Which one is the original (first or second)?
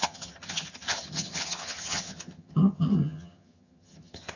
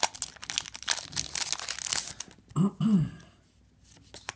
second